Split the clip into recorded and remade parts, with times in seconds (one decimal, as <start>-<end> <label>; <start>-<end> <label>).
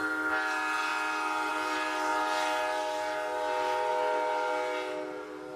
0.0-5.6 recorded